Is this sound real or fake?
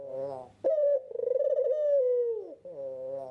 real